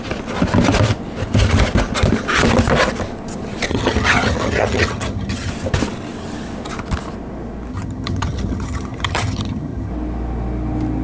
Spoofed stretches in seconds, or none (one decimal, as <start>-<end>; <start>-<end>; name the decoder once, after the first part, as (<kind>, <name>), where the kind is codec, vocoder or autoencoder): 3.7-5.5 (vocoder, HiFi-GAN); 7.7-9.9